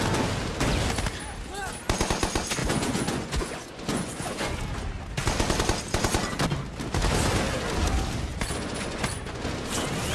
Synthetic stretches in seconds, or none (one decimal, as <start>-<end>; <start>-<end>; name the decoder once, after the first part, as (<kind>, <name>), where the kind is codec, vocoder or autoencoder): 2.6-4.6 (vocoder, Vocos); 8.3-9.5